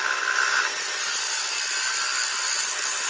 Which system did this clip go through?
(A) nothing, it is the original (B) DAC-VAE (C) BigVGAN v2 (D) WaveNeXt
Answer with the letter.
A